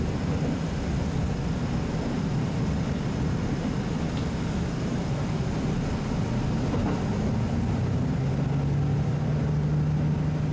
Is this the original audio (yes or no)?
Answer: yes